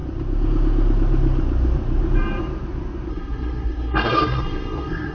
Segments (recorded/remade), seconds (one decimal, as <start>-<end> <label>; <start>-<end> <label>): 0.0-3.1 recorded; 3.1-5.1 remade